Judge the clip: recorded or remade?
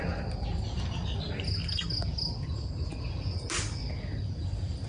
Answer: recorded